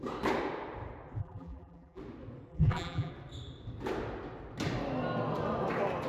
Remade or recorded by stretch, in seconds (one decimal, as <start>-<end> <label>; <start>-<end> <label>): 0.0-1.2 recorded; 1.2-2.0 remade; 2.0-2.5 recorded; 2.5-3.1 remade; 3.1-6.1 recorded